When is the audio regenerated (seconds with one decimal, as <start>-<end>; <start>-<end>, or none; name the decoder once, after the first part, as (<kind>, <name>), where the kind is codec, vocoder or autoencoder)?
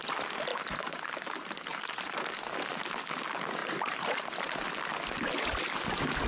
0.5-1.1 (vocoder, BigVGAN v2); 1.7-2.8; 3.6-4.7